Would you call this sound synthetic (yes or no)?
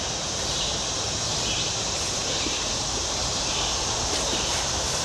yes